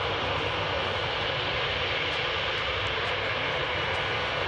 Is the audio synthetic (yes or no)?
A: no